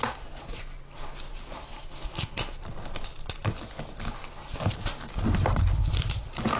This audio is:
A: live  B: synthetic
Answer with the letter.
A